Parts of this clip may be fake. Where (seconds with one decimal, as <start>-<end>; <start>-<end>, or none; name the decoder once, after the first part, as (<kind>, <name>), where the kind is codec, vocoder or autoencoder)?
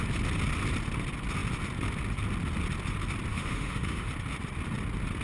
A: 3.3-4.1 (autoencoder, DAC-VAE)